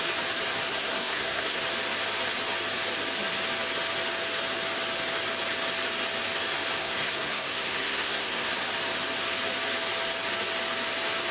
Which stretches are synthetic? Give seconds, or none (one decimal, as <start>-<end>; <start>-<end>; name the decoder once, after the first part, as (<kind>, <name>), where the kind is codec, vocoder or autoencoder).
0.7-1.6 (codec, SNAC); 6.8-8.5